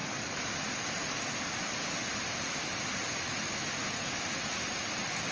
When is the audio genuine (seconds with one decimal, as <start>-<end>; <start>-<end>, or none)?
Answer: 0.0-2.0; 2.7-5.3